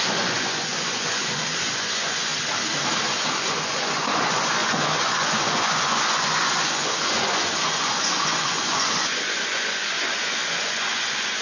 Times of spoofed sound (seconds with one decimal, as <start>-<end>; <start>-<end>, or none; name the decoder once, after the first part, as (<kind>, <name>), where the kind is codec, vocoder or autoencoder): 0.0-2.3 (vocoder, Vocos); 3.2-11.4